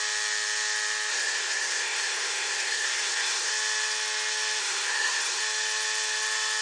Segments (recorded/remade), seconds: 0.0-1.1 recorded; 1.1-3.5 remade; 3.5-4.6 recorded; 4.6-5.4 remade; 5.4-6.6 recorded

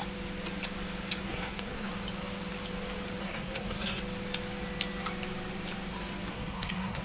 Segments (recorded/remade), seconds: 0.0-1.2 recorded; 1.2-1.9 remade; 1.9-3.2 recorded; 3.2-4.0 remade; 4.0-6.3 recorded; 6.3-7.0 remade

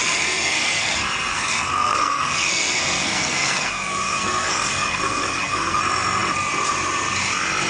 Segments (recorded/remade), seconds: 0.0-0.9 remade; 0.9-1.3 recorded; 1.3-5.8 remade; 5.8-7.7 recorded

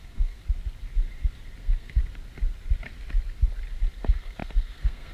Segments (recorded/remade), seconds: 0.0-0.4 remade; 0.4-1.6 recorded; 1.6-2.0 remade; 2.0-4.0 recorded; 4.0-5.1 remade

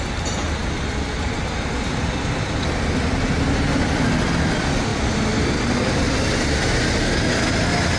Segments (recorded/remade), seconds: 0.0-8.0 recorded

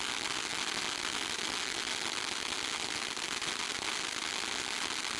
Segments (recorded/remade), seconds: 0.0-5.2 recorded